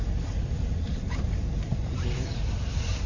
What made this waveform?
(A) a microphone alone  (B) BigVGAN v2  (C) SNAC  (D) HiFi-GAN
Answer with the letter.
B